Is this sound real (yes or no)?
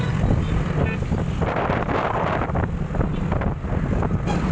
yes